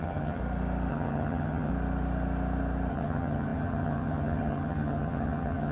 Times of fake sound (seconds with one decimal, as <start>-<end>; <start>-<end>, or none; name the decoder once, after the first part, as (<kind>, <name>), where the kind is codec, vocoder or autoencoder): 0.0-0.4 (vocoder, HiFi-GAN); 0.9-1.7; 2.9-5.7

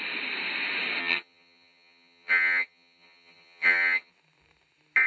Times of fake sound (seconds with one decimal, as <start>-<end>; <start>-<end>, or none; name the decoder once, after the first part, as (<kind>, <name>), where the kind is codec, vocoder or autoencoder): 1.0-4.1 (vocoder, HiFi-GAN)

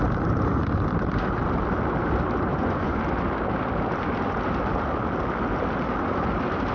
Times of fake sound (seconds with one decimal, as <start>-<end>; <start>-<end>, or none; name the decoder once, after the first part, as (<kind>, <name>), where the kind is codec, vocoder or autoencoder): 2.5-3.0 (vocoder, Vocos)

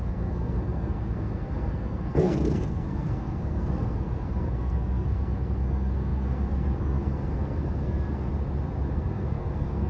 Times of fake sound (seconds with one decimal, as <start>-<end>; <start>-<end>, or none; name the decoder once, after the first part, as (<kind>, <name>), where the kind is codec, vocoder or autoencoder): 0.0-8.3 (codec, SNAC); 8.9-9.9

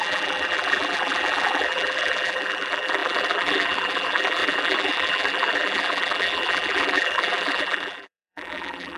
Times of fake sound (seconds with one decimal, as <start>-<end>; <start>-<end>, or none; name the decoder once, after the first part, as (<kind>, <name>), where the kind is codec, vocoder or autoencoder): 0.0-9.0 (vocoder, BigVGAN v2)

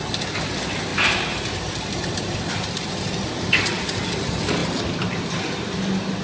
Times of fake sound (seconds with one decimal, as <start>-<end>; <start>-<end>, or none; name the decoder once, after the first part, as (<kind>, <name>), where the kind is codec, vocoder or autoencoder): 0.9-2.4 (vocoder, BigVGAN v2); 4.6-5.8

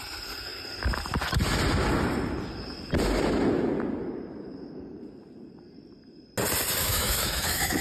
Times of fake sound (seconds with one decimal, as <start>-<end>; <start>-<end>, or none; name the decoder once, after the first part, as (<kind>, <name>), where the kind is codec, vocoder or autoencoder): 6.8-7.8 (autoencoder, DAC-VAE)

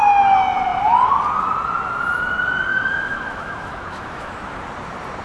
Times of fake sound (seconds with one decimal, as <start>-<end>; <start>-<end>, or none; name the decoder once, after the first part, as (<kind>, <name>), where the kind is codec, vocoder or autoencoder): 2.7-4.5 (autoencoder, DAC-VAE)